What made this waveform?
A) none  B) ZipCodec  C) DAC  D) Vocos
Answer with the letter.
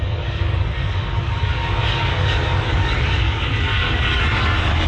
C